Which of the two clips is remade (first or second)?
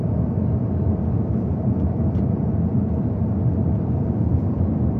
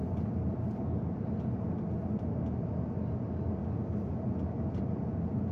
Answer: first